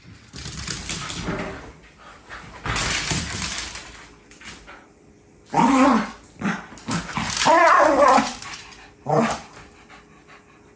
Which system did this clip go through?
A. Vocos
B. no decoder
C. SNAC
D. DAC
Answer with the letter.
B